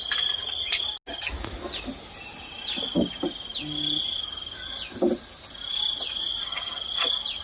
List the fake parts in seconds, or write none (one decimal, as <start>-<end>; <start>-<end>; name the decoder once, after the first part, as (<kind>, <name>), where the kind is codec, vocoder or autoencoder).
none